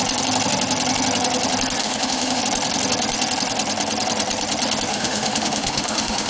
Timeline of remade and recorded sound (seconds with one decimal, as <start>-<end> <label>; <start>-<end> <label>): 0.0-1.8 recorded; 1.8-2.4 remade; 2.4-4.9 recorded; 4.9-6.3 remade